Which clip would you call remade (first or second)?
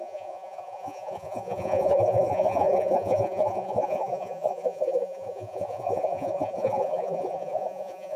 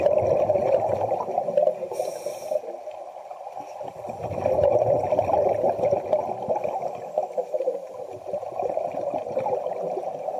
first